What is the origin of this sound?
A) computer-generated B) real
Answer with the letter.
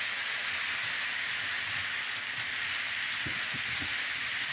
B